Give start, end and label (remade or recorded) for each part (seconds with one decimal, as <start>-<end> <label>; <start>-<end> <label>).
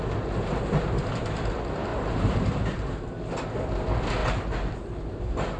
0.0-1.9 recorded; 1.9-2.9 remade; 2.9-4.2 recorded; 4.2-5.6 remade